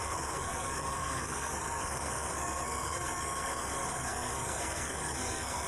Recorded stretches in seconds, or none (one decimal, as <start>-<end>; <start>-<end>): none